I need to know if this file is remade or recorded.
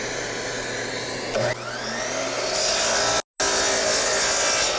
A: recorded